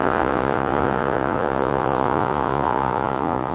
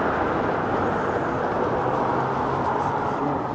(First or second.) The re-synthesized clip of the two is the first